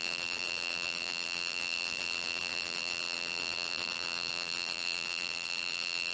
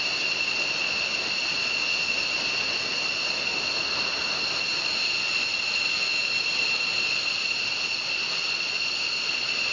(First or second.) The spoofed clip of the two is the first